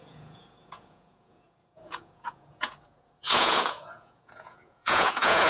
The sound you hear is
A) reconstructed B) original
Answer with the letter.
A